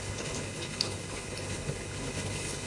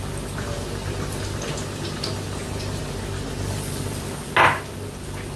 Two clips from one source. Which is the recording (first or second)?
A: second